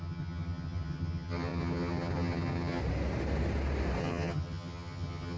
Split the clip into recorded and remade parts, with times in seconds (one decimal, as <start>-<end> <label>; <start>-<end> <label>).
0.0-2.8 remade; 2.8-4.0 recorded; 4.0-5.4 remade